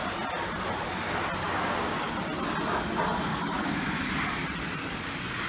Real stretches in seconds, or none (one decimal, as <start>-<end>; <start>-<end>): 0.0-1.4; 2.1-3.3; 3.9-5.5